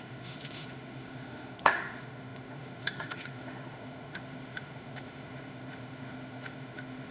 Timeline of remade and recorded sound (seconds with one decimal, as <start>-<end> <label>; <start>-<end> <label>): 0.0-7.1 remade